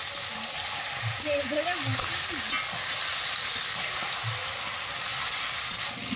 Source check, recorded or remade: recorded